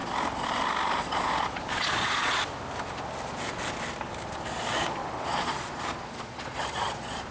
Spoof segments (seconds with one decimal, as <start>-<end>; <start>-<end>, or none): 1.0-2.5; 4.5-7.3